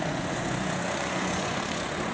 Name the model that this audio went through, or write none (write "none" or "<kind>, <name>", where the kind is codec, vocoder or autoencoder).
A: vocoder, Vocos